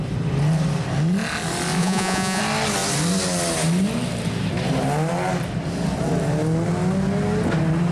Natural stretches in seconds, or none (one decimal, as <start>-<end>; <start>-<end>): 0.0-1.8; 2.4-7.9